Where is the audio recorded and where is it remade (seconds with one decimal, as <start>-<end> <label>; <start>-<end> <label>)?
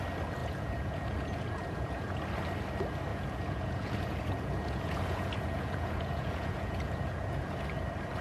0.0-0.4 recorded; 0.4-2.2 remade; 2.2-3.1 recorded; 3.1-7.6 remade; 7.6-8.2 recorded